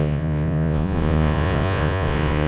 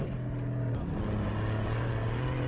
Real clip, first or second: second